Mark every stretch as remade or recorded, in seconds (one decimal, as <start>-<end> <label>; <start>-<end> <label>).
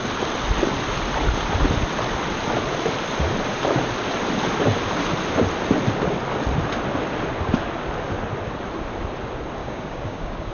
0.0-9.6 recorded; 9.6-10.5 remade